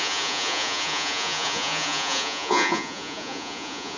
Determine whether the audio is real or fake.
fake